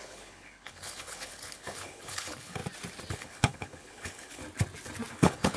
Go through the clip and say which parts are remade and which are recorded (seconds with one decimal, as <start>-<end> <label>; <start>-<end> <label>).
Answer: 0.0-2.6 remade; 2.6-3.1 recorded; 3.1-4.4 remade; 4.4-5.1 recorded; 5.1-5.6 remade